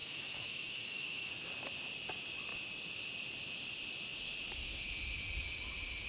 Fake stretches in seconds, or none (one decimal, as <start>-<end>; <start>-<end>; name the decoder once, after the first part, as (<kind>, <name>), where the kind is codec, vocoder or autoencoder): 0.0-1.3 (autoencoder, DAC-VAE)